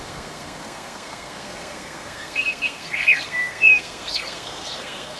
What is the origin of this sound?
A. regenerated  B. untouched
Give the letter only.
A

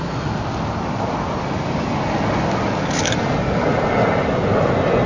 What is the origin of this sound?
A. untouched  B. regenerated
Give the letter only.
A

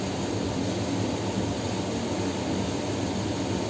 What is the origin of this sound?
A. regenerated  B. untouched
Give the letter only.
B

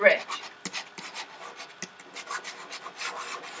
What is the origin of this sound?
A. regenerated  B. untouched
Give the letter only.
B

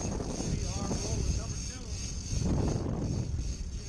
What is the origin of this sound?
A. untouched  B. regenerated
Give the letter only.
A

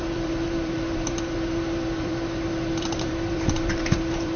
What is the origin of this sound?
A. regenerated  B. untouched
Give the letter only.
A